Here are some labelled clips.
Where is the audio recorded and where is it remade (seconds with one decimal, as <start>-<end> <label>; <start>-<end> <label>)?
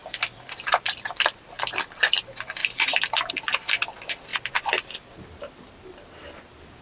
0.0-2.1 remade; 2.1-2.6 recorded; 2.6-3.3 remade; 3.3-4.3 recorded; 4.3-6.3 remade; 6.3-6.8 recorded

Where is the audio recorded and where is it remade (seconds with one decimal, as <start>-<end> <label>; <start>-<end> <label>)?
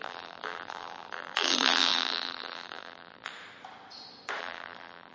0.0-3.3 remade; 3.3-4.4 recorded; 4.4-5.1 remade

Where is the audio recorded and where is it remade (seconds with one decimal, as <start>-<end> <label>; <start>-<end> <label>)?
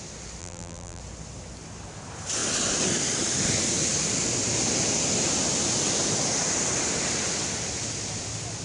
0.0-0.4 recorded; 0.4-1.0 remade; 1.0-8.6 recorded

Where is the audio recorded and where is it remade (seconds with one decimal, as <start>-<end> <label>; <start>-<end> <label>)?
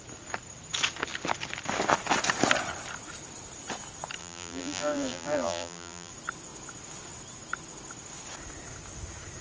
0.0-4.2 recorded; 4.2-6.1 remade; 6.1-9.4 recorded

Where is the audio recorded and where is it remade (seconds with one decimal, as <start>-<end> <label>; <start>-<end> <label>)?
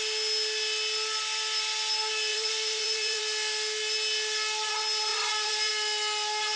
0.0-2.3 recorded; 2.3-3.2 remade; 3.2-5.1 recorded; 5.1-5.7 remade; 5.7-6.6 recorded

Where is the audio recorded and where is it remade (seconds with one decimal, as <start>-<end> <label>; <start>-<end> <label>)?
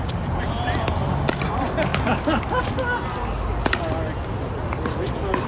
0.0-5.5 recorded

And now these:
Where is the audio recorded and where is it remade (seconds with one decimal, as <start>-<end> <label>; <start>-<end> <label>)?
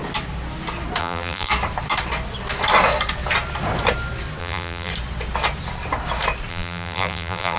0.0-1.0 recorded; 1.0-1.5 remade; 1.5-4.4 recorded; 4.4-4.9 remade; 4.9-6.5 recorded; 6.5-7.6 remade